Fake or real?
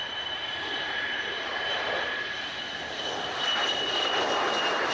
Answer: fake